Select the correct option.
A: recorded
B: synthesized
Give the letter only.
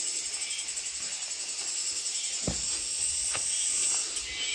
A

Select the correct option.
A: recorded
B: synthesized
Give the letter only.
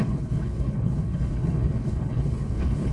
B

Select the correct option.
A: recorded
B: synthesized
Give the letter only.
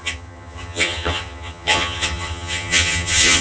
B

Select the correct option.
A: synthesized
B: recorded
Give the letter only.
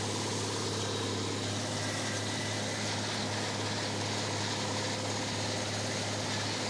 B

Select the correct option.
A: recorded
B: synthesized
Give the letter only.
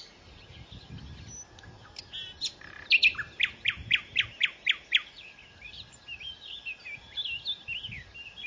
A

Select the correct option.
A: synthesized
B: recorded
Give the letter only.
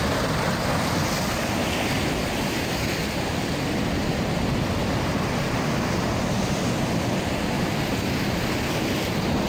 B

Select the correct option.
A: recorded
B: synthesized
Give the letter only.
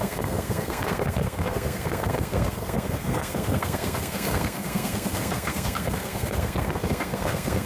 B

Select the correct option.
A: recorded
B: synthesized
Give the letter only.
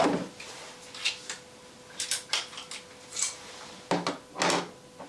A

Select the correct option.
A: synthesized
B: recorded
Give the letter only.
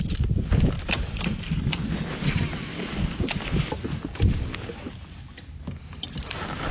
B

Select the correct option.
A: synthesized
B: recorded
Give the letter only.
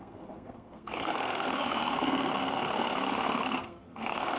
A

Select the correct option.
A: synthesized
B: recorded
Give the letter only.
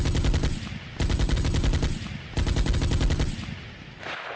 B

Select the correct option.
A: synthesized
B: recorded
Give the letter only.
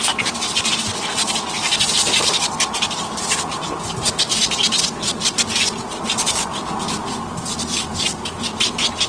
B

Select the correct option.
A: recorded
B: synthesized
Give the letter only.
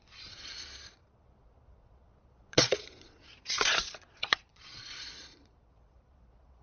B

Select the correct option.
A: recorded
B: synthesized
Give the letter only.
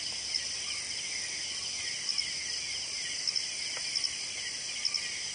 A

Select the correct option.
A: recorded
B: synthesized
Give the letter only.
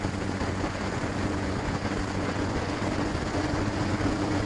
B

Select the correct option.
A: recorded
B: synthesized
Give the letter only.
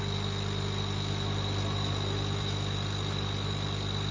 A